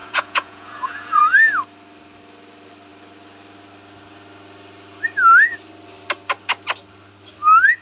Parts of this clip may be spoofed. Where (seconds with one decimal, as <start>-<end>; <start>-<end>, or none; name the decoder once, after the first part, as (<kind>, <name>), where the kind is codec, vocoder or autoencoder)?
0.0-1.2 (vocoder, Vocos)